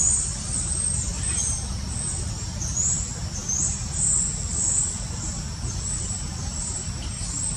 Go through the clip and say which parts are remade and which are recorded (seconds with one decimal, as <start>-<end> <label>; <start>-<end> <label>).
0.0-7.6 recorded